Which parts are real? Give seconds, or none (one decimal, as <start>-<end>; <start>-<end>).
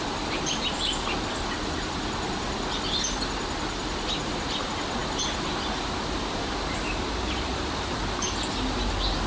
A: 0.0-9.3